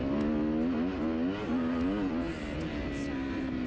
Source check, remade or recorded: recorded